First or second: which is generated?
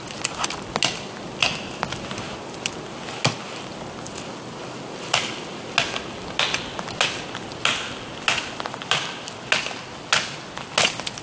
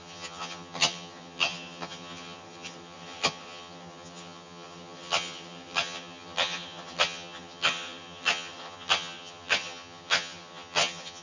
second